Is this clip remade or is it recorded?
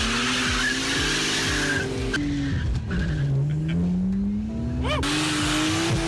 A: recorded